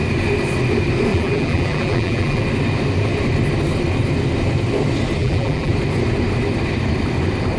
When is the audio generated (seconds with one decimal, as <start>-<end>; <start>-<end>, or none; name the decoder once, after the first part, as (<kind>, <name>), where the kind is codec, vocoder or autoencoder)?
1.1-2.4 (vocoder, BigVGAN v2); 5.2-5.7